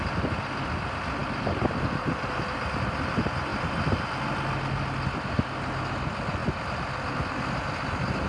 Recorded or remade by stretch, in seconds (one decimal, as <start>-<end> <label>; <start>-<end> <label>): 0.0-8.3 recorded